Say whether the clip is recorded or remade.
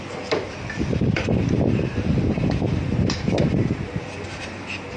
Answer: remade